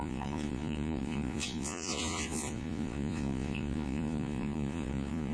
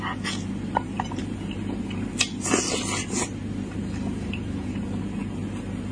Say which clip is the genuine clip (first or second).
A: second